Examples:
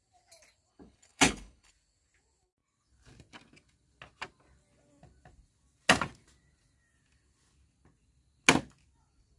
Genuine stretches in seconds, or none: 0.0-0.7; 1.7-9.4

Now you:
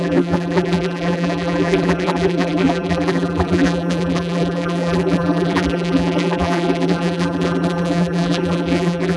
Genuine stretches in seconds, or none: none